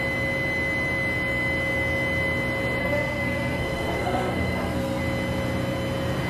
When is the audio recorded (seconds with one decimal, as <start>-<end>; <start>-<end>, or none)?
0.0-2.8; 5.0-6.3